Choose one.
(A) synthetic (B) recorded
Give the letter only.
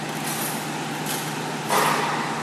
B